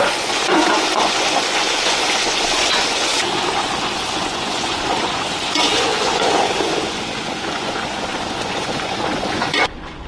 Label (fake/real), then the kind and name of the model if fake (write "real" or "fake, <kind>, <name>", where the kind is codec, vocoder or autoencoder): fake, vocoder, Vocos